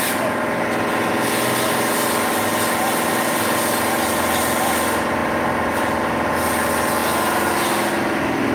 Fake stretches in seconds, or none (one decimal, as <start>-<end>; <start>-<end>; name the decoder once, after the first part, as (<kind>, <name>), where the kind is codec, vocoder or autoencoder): none